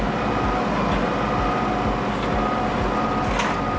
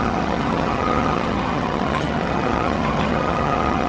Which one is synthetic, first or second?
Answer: second